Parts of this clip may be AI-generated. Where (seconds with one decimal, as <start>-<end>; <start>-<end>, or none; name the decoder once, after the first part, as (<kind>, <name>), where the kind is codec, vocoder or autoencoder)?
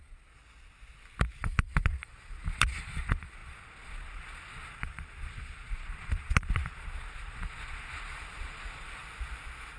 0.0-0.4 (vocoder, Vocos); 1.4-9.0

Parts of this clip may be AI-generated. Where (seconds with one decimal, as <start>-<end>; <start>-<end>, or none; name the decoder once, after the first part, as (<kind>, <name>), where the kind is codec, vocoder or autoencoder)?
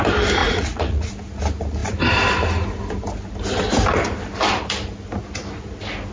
0.4-1.1 (vocoder, Vocos)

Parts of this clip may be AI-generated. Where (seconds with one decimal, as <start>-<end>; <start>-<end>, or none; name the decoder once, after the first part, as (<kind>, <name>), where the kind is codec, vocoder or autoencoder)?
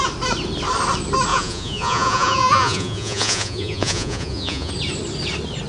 1.3-4.7 (vocoder, Vocos)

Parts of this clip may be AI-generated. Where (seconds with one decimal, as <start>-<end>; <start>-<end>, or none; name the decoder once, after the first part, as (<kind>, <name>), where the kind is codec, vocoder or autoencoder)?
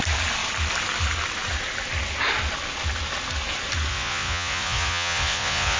3.9-5.8 (vocoder, Vocos)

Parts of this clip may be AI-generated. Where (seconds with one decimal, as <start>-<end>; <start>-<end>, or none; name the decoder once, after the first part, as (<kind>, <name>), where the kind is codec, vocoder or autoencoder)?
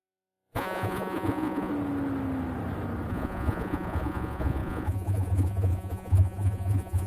0.0-1.7 (vocoder, Vocos); 3.1-7.1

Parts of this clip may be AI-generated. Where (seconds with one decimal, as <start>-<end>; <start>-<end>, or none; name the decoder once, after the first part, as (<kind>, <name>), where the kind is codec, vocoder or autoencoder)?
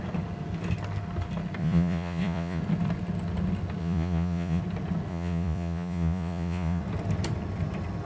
1.6-2.6 (vocoder, Vocos); 3.8-4.6; 5.1-6.8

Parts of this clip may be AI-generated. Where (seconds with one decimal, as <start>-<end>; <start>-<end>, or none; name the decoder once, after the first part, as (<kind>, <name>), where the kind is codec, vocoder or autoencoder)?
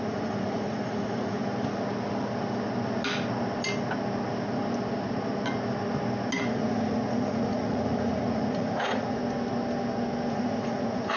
0.0-1.4 (vocoder, Vocos); 6.5-9.2; 10.3-11.2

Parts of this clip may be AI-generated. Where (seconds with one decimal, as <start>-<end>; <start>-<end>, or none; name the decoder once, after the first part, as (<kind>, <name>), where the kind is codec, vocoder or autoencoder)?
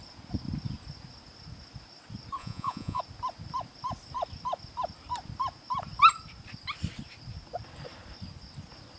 2.4-3.0 (vocoder, Vocos)